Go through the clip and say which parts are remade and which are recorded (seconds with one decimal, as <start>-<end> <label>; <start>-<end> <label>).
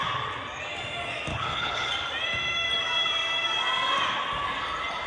0.0-1.3 recorded; 1.3-1.9 remade; 1.9-5.1 recorded